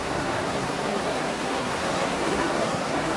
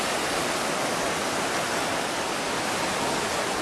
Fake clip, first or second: first